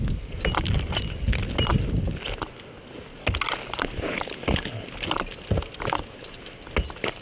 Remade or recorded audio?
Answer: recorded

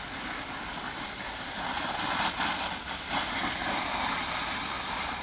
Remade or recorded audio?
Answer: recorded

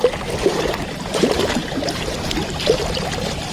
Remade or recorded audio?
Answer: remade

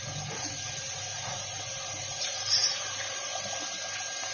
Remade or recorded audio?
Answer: recorded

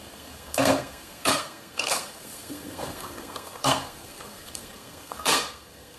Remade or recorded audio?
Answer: remade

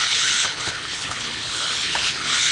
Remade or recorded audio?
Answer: remade